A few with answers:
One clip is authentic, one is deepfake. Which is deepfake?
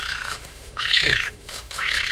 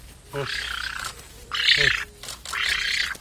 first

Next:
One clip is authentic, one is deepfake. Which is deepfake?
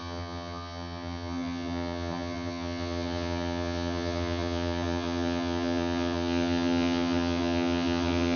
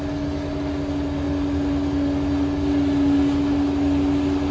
first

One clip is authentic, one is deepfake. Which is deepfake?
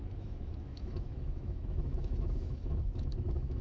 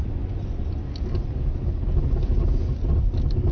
first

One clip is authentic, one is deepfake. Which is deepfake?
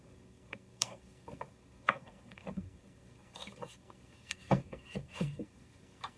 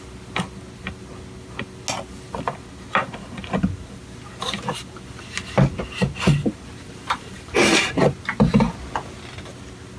first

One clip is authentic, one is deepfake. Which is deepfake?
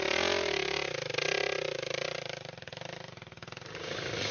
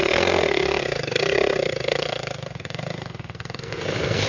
second